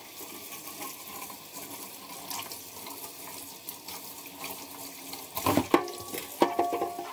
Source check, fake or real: real